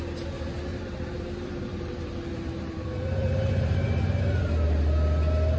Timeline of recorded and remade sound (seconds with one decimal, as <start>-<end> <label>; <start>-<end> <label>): 0.0-0.7 recorded; 0.7-4.1 remade; 4.1-5.6 recorded